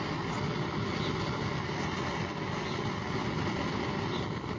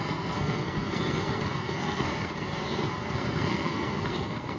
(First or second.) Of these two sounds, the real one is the first